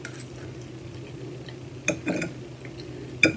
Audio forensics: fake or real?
real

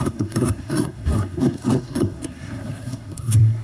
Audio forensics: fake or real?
fake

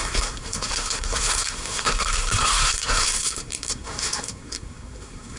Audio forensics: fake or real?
fake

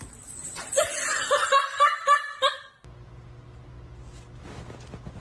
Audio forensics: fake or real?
real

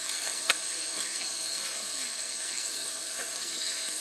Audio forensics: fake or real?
fake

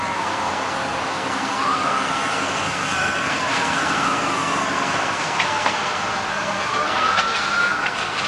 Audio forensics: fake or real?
fake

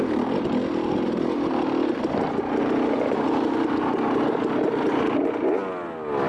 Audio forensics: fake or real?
real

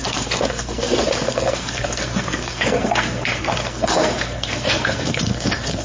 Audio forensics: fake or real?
fake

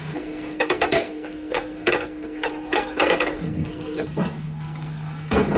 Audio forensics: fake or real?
fake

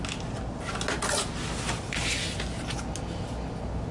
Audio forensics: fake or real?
real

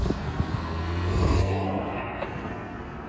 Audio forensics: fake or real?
fake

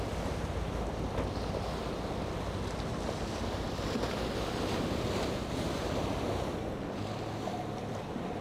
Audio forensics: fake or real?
real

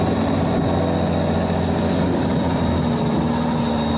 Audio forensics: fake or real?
real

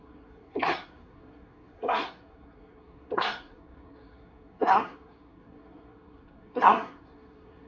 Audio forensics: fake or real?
fake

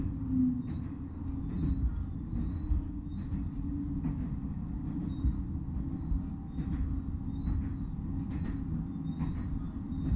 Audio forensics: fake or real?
real